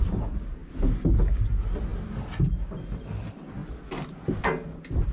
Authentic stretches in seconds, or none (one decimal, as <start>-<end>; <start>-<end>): 0.0-5.1